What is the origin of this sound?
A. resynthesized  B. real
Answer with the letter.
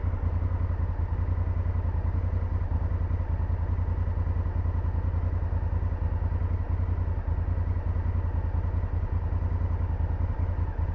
B